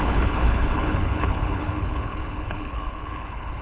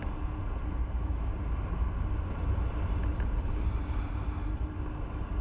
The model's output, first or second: first